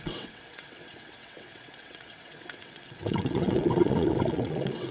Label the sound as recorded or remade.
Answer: remade